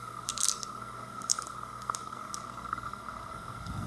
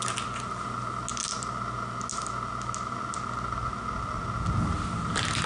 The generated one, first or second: first